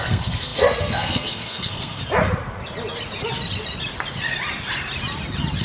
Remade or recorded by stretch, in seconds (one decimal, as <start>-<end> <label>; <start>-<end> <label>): 0.0-2.0 remade; 2.0-5.6 recorded

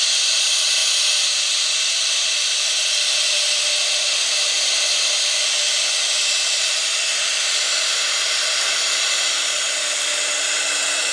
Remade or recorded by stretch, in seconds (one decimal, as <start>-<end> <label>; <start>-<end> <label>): 0.0-11.1 recorded

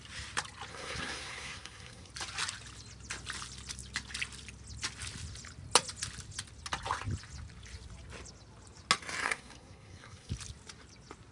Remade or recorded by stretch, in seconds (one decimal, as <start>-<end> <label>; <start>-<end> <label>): 0.0-0.7 recorded; 0.7-2.1 remade; 2.1-9.2 recorded; 9.2-10.3 remade; 10.3-11.3 recorded

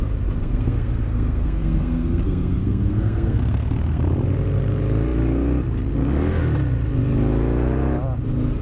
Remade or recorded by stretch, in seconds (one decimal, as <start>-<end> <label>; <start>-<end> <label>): 0.0-0.4 recorded; 0.4-4.0 remade; 4.0-8.6 recorded

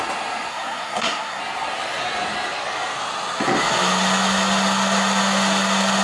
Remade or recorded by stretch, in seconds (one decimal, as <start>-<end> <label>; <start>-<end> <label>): 0.0-0.5 recorded; 0.5-1.4 remade; 1.4-6.0 recorded

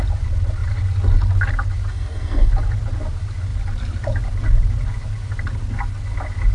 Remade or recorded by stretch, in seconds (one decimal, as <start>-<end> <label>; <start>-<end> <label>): 0.0-1.9 recorded; 1.9-2.5 remade; 2.5-6.5 recorded

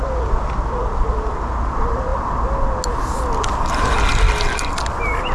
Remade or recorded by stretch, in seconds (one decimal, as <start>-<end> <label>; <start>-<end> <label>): 0.0-5.3 recorded

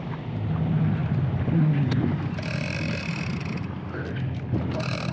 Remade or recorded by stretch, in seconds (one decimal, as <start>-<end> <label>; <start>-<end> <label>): 0.0-5.1 recorded